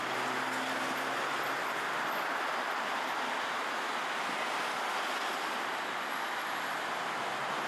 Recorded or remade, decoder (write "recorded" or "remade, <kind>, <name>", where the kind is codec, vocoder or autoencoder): recorded